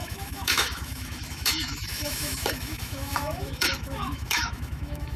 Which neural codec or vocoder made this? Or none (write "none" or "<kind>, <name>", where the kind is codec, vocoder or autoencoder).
autoencoder, DAC-VAE